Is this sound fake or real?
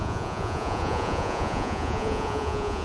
fake